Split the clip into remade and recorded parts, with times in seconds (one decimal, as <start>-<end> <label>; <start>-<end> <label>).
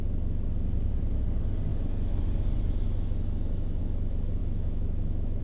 0.0-4.4 recorded; 4.4-5.4 remade